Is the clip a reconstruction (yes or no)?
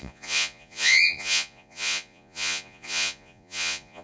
yes